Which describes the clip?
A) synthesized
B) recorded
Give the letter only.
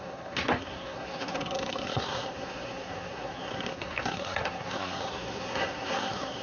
A